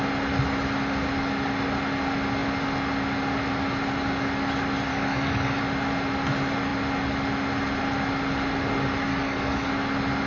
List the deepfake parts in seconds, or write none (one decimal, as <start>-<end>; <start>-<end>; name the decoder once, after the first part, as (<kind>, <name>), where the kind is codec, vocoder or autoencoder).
4.9-5.6 (codec, DAC); 9.1-9.7